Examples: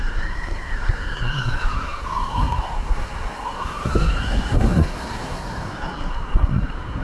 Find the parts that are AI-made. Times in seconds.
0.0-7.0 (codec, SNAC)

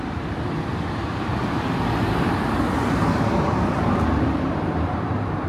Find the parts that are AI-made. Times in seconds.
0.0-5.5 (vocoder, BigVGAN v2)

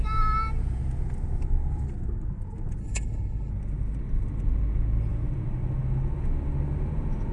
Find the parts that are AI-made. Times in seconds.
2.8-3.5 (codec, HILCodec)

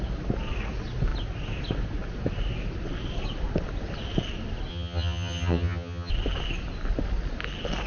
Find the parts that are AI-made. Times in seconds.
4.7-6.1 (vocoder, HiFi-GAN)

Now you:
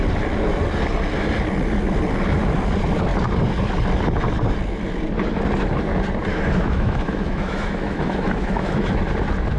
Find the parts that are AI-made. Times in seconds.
6.3-8.9 (autoencoder, DAC-VAE)

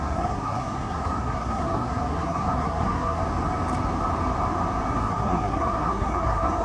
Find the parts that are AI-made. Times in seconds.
0.0-3.2 (codec, SNAC); 4.9-6.6